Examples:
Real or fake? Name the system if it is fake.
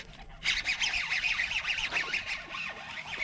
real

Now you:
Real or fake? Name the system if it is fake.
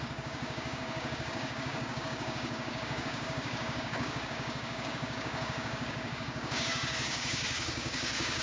fake, codec, DAC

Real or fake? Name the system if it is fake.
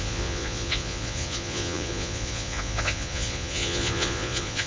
fake, vocoder, Vocos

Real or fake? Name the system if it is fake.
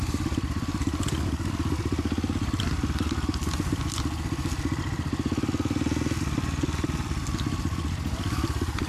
real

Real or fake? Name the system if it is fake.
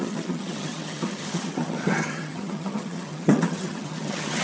fake, vocoder, HiFi-GAN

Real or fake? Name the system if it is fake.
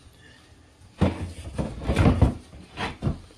real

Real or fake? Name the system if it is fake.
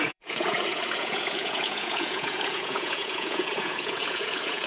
fake, vocoder, Vocos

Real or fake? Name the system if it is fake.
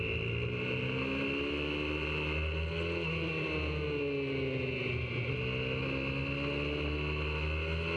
real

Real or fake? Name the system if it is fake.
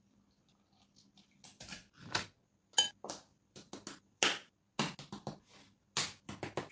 real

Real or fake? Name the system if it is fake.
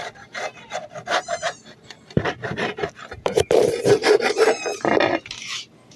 fake, vocoder, BigVGAN v2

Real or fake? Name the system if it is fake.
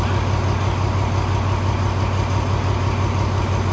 real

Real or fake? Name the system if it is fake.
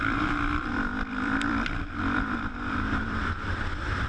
fake, vocoder, BigVGAN v2